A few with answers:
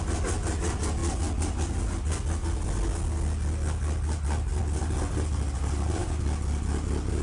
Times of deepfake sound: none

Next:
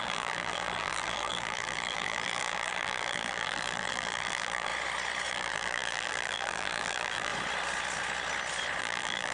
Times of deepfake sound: 0.0-4.7 (vocoder, BigVGAN v2); 5.3-7.3; 8.8-9.3

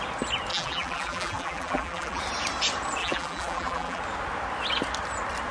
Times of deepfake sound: 0.5-2.2 (vocoder, BigVGAN v2); 3.0-4.0